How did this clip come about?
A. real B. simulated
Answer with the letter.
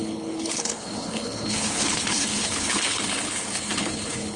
B